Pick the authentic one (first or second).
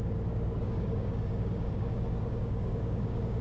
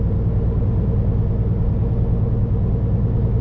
second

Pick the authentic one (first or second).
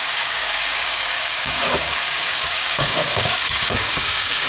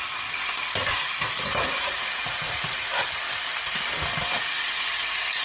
second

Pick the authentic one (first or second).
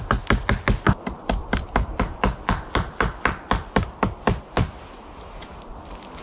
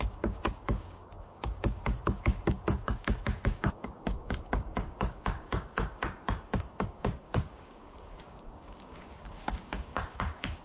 first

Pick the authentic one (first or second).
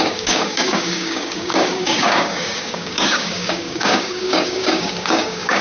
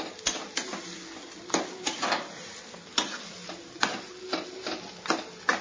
second